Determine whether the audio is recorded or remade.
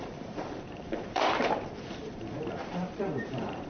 remade